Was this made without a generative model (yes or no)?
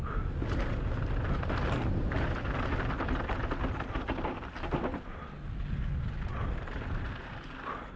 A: yes